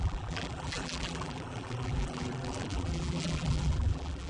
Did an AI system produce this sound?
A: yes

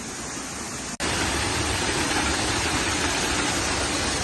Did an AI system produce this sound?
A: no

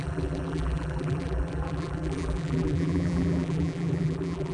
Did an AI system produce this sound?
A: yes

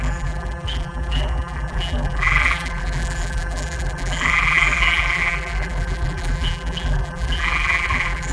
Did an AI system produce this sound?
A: yes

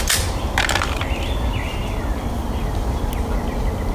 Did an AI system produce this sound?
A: no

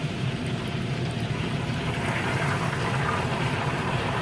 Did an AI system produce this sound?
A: yes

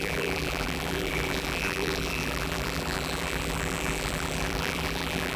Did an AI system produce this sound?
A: yes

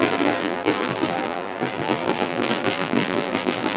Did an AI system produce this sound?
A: yes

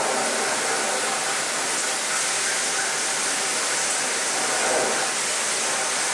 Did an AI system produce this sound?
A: no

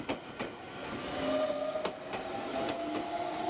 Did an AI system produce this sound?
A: no